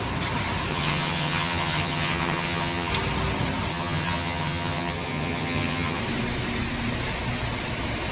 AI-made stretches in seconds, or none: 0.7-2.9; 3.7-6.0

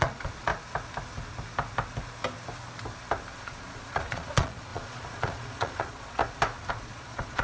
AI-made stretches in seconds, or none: 0.0-0.5; 3.3-6.2; 6.7-7.4

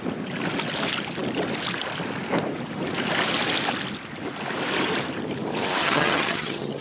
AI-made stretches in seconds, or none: 5.8-6.8

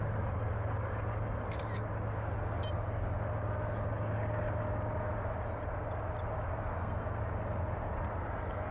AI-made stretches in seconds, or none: 6.7-7.2

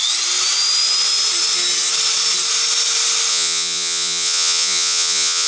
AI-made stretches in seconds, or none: 3.3-5.5

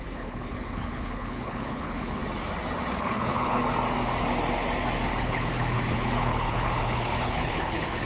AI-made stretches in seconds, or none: 0.0-2.2; 2.9-3.6; 5.2-8.1

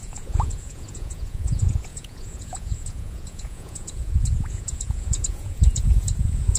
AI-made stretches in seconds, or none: 0.0-6.6